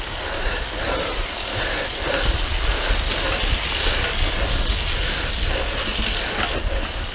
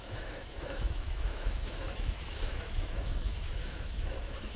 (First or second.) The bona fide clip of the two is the first